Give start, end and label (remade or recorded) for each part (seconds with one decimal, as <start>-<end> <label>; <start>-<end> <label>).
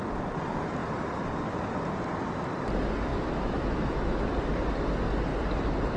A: 0.0-3.1 recorded; 3.1-4.3 remade; 4.3-6.0 recorded